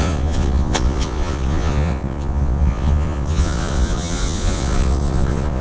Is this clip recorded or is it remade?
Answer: remade